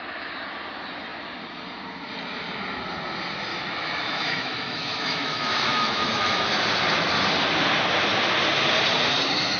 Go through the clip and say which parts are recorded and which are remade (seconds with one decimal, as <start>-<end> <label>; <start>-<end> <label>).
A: 0.0-3.5 recorded; 3.5-6.5 remade; 6.5-9.6 recorded